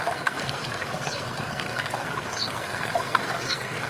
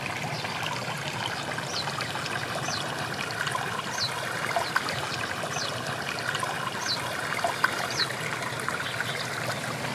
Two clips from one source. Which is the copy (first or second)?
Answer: first